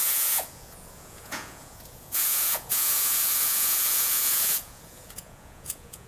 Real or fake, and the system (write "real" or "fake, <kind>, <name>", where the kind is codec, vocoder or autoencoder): fake, vocoder, Vocos